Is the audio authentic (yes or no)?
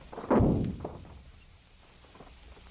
yes